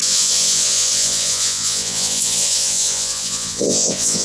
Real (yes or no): no